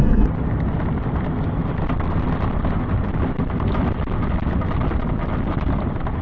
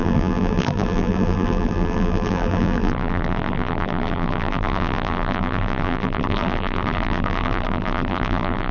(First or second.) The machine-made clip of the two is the second